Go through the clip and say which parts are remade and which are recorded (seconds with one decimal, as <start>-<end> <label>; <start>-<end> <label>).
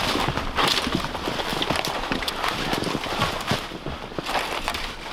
0.0-1.5 recorded; 1.5-4.2 remade; 4.2-5.1 recorded